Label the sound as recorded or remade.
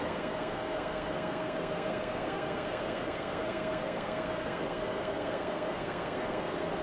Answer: remade